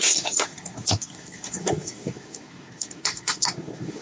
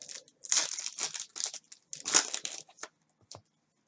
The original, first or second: second